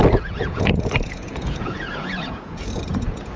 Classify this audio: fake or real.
fake